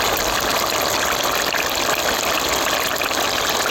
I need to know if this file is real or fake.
real